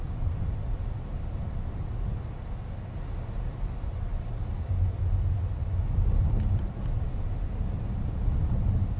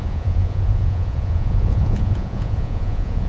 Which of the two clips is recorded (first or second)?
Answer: first